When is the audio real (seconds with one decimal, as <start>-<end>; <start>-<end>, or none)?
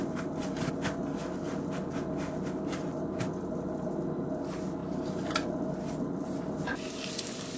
0.0-7.6